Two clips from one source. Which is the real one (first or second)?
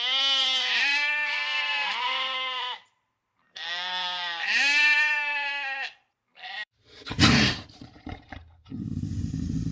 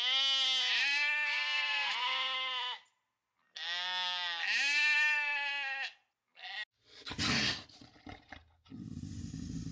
second